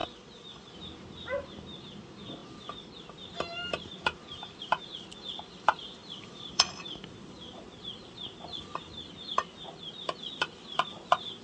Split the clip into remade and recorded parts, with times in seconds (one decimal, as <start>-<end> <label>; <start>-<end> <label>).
0.0-0.7 remade; 0.7-6.0 recorded; 6.0-7.6 remade; 7.6-11.4 recorded